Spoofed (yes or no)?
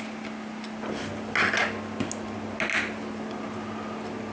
no